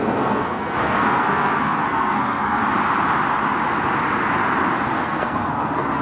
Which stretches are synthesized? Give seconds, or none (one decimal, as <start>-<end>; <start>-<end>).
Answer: 0.0-2.6; 4.9-6.0